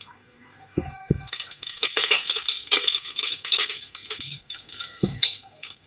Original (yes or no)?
no